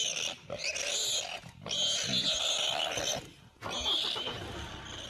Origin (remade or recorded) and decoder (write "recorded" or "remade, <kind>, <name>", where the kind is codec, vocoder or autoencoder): recorded